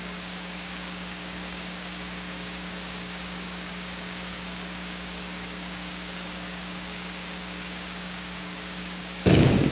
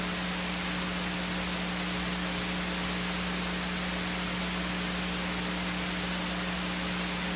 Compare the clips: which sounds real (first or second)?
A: second